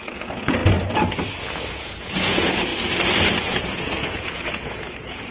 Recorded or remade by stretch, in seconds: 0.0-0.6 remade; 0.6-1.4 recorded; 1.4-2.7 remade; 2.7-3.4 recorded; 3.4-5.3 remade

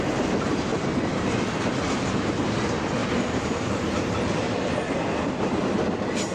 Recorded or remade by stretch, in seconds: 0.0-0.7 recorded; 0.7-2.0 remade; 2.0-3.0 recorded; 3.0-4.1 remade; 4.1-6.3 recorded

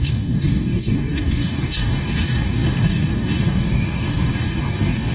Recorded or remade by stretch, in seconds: 0.0-5.1 remade

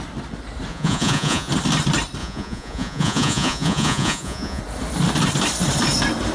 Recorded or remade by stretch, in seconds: 0.0-0.7 recorded; 0.7-1.5 remade; 1.5-2.2 recorded; 2.2-4.6 remade; 4.6-6.3 recorded

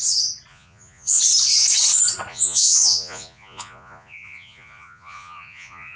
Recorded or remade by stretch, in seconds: 0.0-0.5 recorded; 0.5-1.2 remade; 1.2-2.3 recorded; 2.3-6.0 remade

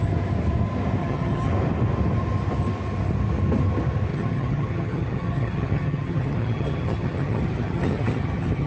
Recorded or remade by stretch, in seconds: 0.0-1.0 recorded; 1.0-1.5 remade; 1.5-4.1 recorded; 4.1-8.7 remade